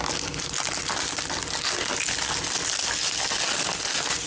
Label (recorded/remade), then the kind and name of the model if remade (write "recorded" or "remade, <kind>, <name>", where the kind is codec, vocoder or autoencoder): recorded